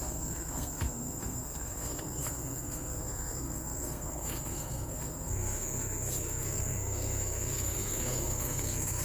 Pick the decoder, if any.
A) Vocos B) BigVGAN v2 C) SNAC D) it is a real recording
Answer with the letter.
C